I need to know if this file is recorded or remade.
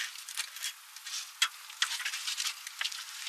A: recorded